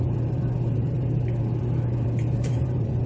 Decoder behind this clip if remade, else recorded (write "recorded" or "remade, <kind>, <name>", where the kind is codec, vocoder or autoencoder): remade, vocoder, BigVGAN v2